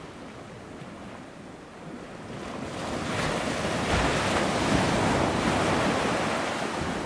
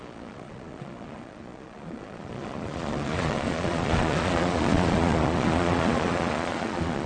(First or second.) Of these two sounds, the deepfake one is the second